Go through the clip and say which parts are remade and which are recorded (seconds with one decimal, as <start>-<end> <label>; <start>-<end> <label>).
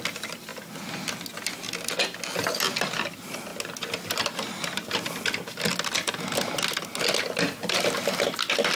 0.0-8.8 recorded